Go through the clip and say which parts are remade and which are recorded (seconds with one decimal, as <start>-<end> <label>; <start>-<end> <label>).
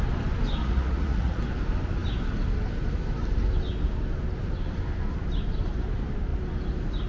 0.0-0.6 recorded; 0.6-1.4 remade; 1.4-7.1 recorded